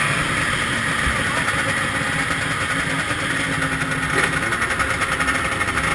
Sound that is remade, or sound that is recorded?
recorded